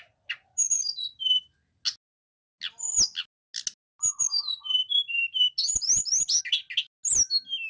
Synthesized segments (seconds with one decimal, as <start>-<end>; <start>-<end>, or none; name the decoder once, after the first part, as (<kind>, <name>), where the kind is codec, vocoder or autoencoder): none